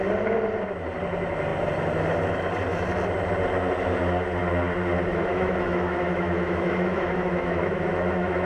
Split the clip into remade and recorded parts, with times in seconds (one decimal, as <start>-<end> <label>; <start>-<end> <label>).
0.0-5.1 recorded; 5.1-8.5 remade